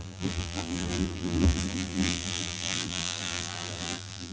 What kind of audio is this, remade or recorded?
remade